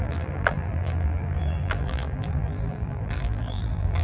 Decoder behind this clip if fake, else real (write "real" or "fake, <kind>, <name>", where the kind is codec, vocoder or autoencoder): fake, vocoder, BigVGAN v2